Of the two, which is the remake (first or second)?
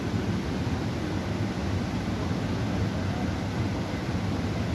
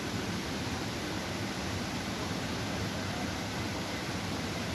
second